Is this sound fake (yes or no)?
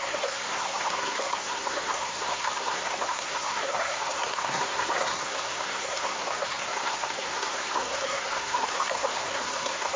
yes